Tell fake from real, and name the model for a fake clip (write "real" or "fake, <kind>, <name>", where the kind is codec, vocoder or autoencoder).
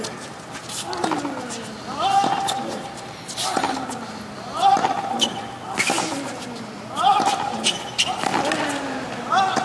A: real